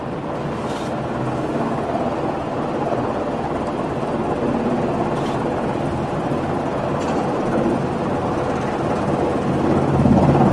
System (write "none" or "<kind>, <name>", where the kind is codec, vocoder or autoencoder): none